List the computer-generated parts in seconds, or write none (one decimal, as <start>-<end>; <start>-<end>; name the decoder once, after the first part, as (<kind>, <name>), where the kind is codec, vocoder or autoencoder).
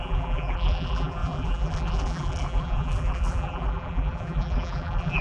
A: 0.0-5.2 (vocoder, BigVGAN v2)